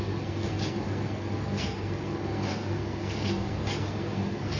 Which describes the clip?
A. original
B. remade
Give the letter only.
B